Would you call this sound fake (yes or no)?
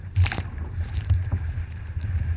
yes